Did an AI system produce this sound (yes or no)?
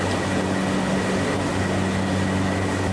no